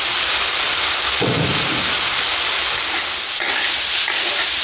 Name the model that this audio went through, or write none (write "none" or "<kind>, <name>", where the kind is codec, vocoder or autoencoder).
none